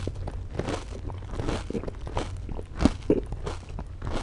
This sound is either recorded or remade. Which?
recorded